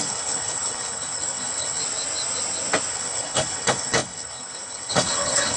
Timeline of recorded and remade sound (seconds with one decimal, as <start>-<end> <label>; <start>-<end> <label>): 0.0-1.8 remade; 1.8-2.9 recorded; 2.9-5.6 remade